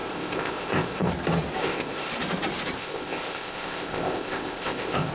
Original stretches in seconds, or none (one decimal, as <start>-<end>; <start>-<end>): 1.1-1.6; 2.1-2.8